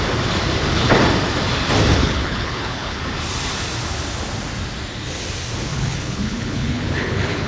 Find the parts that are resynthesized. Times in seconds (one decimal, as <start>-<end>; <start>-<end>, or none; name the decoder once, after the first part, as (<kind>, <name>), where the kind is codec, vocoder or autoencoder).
2.0-3.0 (codec, HILCodec); 5.7-7.5

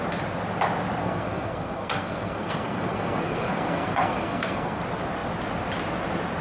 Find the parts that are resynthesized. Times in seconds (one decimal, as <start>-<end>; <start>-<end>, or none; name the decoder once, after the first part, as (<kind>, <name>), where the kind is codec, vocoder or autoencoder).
1.0-4.8 (codec, SNAC)

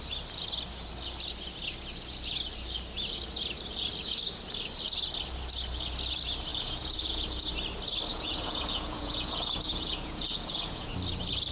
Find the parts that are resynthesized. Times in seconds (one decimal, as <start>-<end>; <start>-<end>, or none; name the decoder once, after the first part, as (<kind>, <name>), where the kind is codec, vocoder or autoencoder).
6.5-7.5 (vocoder, Vocos); 8.1-10.9

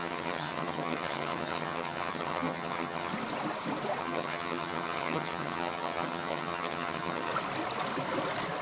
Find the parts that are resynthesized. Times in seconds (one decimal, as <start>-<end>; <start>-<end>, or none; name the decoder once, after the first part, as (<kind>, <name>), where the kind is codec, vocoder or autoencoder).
0.0-3.1 (vocoder, HiFi-GAN); 4.0-7.3

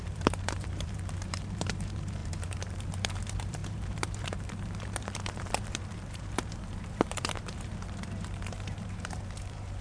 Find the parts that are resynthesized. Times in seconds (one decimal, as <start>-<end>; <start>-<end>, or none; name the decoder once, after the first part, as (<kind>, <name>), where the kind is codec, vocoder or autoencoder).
0.0-9.8 (vocoder, BigVGAN v2)

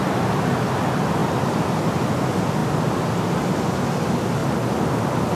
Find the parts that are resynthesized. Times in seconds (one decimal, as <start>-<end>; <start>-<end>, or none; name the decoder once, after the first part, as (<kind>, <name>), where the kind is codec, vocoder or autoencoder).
none

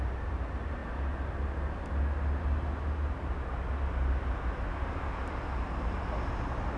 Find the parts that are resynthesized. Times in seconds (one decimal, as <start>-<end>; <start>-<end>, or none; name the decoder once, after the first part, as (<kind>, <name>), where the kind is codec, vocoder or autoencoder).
none

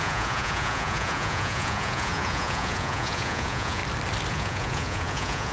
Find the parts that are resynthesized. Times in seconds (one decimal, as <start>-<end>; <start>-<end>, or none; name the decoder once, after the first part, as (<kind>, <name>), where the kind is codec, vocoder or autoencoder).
0.0-3.8 (vocoder, Vocos); 4.3-5.5